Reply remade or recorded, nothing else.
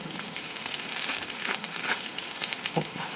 remade